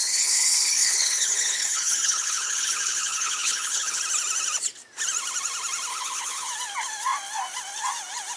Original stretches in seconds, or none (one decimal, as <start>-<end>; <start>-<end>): 4.0-5.9; 6.5-8.4